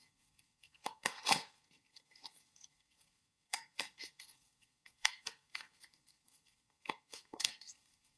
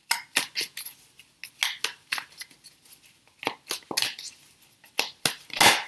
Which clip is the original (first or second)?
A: second